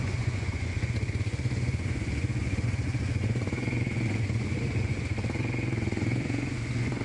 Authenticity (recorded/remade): remade